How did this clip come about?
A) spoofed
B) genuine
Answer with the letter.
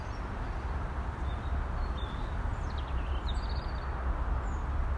B